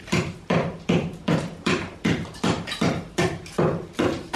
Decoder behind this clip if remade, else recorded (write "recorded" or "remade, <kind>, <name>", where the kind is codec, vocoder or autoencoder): remade, vocoder, BigVGAN v2